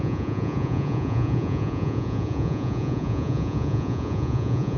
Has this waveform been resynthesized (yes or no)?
yes